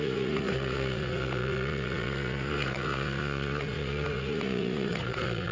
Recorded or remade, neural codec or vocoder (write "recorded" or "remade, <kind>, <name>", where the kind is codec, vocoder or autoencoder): remade, vocoder, Vocos